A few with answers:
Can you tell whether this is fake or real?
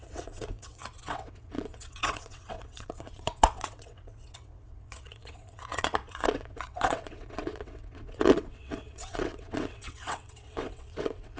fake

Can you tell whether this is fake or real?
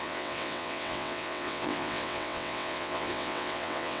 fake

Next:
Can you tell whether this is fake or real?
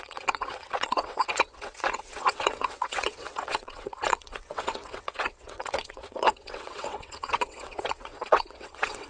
fake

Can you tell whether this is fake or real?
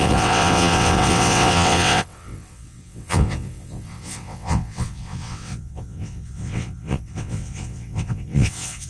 fake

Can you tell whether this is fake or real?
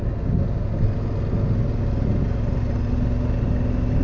real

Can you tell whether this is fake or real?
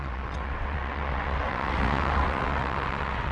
fake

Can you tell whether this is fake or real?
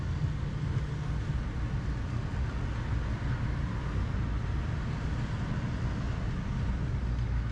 real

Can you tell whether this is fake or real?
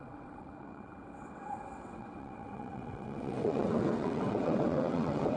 fake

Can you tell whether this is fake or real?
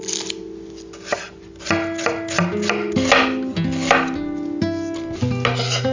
real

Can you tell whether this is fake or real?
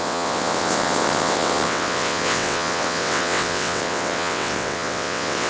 fake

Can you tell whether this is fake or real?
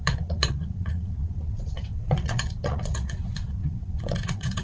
fake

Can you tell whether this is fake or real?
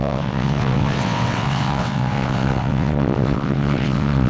fake